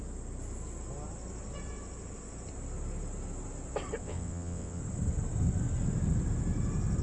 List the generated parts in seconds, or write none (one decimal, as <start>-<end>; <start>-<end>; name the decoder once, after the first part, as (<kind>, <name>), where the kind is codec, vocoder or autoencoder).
4.0-4.8 (vocoder, WaveNeXt)